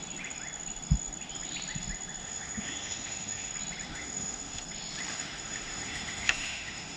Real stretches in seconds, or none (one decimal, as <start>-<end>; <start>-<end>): 0.0-2.2; 3.5-3.9; 4.6-5.1